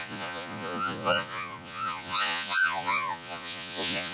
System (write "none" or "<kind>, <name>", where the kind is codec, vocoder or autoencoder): vocoder, Vocos